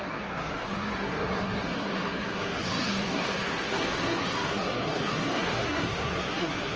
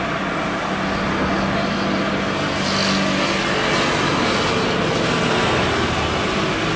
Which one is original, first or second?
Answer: second